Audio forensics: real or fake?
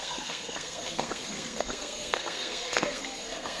fake